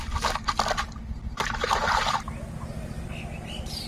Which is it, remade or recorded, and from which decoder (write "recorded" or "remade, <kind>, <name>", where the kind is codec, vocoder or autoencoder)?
recorded